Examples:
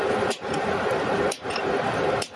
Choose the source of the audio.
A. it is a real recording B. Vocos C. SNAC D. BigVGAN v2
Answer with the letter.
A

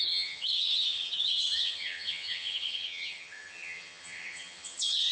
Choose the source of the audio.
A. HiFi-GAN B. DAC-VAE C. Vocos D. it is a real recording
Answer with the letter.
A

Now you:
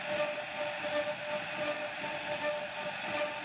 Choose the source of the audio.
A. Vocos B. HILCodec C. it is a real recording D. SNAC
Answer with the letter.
C